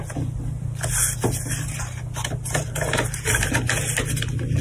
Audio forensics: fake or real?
real